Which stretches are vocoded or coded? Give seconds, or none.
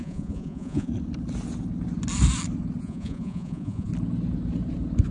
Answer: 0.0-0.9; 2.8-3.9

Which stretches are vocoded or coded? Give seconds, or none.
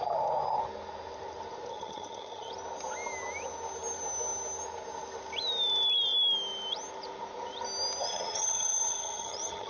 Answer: 1.7-2.5; 8.0-9.7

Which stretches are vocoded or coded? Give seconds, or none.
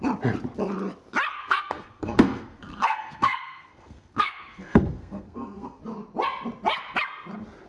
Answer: 1.3-5.8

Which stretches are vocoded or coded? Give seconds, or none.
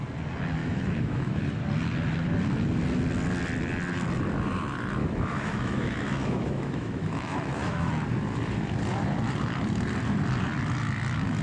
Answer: 0.6-1.4; 5.0-7.9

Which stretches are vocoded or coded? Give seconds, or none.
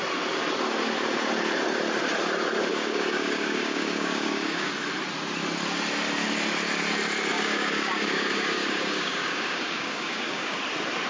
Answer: 2.7-4.7; 7.3-10.6